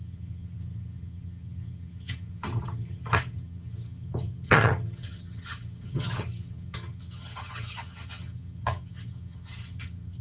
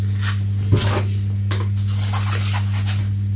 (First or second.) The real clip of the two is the second